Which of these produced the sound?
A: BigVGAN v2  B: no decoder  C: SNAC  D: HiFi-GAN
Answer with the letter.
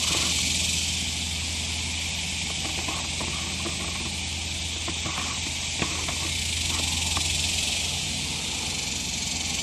B